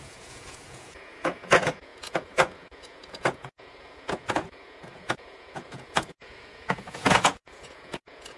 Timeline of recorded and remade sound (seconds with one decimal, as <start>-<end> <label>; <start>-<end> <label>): 0.0-8.4 remade